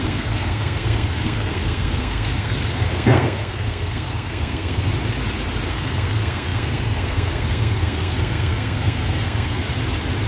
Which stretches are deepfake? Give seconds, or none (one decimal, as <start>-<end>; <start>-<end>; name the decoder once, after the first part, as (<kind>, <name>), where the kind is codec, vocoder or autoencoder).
0.0-4.9 (codec, SNAC); 5.7-9.6